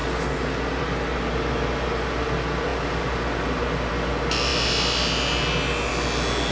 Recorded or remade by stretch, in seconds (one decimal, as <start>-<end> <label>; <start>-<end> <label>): 0.0-6.5 recorded